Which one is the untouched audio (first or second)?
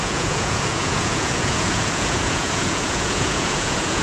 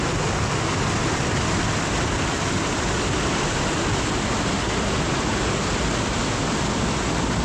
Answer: second